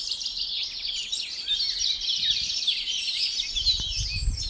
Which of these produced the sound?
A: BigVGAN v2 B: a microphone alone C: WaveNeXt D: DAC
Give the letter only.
B